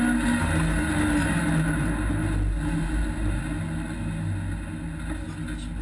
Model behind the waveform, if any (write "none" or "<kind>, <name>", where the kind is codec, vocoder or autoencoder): none